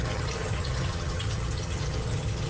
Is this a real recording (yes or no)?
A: no